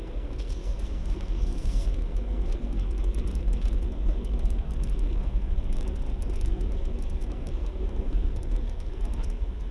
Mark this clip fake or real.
fake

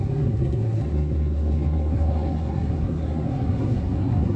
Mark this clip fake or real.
fake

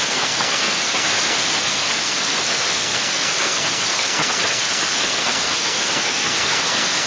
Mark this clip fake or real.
fake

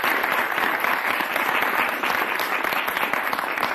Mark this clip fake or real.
real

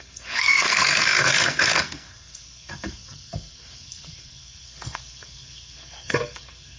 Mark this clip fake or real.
fake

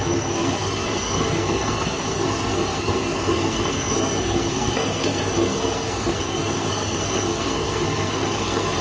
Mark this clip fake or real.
fake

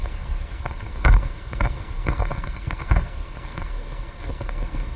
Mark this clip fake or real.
fake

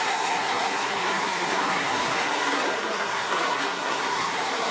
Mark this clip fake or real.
fake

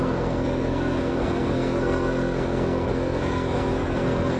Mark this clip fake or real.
fake